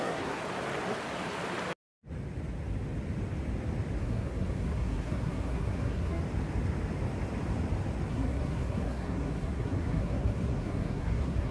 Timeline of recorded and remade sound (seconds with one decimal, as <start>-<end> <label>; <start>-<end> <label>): 0.0-0.4 remade; 0.4-4.0 recorded; 4.0-6.2 remade; 6.2-8.1 recorded; 8.1-11.5 remade